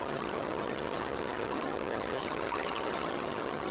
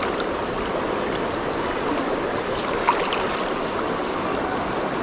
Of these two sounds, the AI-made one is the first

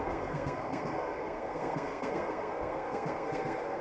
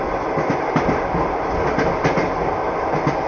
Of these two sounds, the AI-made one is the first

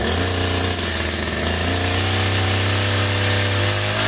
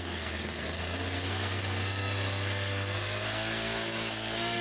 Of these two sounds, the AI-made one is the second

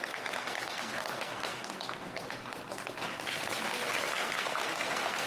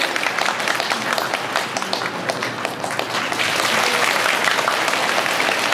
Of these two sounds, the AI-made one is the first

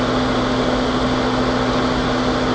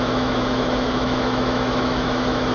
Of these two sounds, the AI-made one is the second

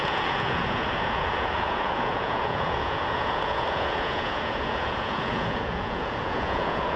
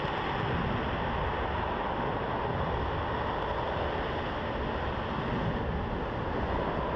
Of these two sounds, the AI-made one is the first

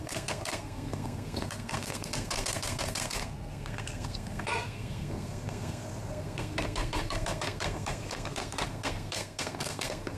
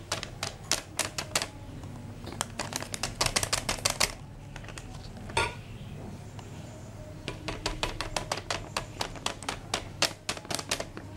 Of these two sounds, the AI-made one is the first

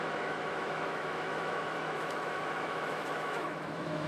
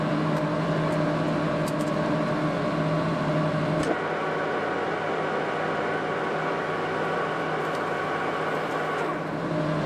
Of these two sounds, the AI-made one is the first